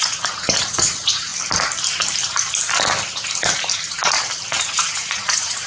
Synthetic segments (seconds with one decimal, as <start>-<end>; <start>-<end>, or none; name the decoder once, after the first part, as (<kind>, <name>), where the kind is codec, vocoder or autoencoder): 0.0-1.3 (vocoder, Vocos); 4.7-5.7

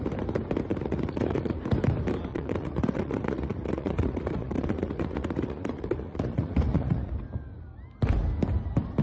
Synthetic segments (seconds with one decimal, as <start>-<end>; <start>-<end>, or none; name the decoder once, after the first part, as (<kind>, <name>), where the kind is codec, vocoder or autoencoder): 0.7-1.6 (vocoder, Vocos); 2.3-7.1